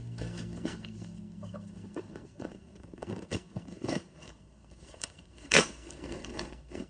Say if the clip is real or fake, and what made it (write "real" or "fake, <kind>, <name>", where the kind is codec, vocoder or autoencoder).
fake, codec, SNAC